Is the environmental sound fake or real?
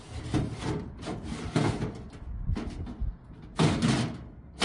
real